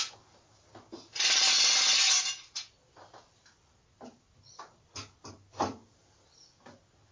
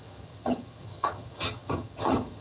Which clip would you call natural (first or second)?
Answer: first